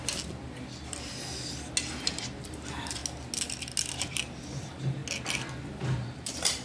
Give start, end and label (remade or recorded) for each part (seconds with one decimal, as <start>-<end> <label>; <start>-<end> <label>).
0.0-2.5 recorded; 2.5-3.0 remade; 3.0-4.6 recorded; 4.6-5.0 remade; 5.0-5.7 recorded; 5.7-6.6 remade